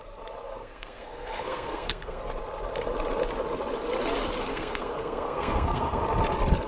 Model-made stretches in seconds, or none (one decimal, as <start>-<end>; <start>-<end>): 0.6-2.2; 4.5-6.0